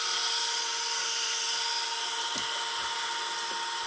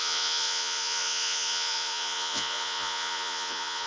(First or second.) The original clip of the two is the first